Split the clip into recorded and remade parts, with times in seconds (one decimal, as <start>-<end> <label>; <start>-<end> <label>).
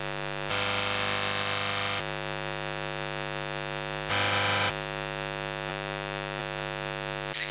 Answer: 0.0-0.5 recorded; 0.5-2.0 remade; 2.0-4.1 recorded; 4.1-4.7 remade; 4.7-7.5 recorded